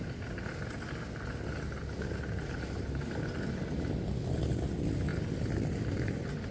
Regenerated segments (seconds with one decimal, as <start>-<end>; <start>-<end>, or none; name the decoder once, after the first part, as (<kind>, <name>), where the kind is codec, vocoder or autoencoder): none